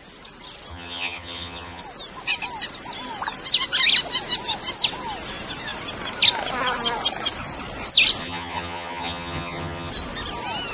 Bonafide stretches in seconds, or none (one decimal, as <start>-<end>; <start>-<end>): 0.0-0.7; 1.8-8.2; 9.9-10.7